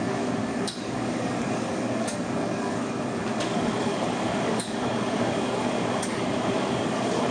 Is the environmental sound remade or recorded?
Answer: remade